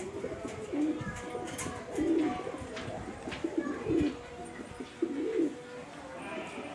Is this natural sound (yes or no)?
yes